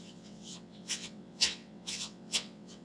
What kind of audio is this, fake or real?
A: fake